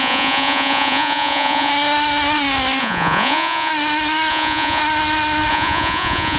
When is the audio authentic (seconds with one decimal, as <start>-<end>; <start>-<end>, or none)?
1.7-2.8; 3.7-4.3; 4.8-5.5